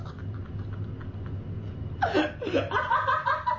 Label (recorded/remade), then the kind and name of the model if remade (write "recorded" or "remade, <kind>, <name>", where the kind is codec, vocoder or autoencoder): recorded